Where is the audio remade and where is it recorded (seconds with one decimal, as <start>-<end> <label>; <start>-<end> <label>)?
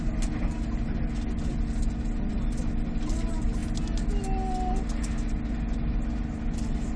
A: 0.0-7.0 recorded